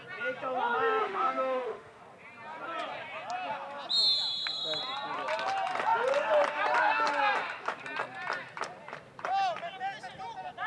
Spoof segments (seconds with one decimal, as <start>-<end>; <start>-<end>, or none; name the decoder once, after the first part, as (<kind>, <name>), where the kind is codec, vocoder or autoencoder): 1.0-2.0 (autoencoder, DAC-VAE)